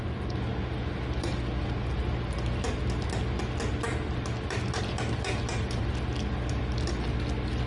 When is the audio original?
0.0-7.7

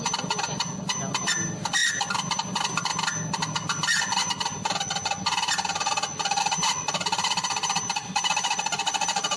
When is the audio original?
0.0-9.4

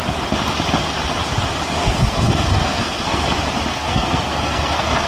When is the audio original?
0.0-1.8; 3.2-3.7

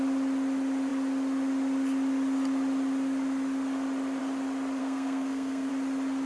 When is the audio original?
0.0-4.8; 5.7-6.3

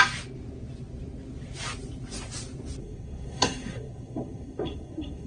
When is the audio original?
0.0-2.8

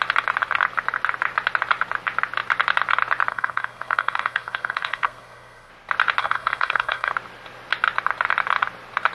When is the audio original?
0.0-3.3; 5.7-6.2; 7.1-9.1

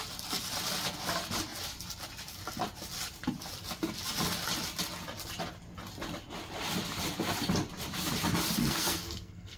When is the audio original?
0.0-8.6

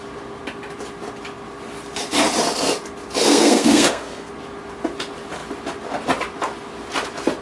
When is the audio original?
0.0-3.2; 4.3-7.4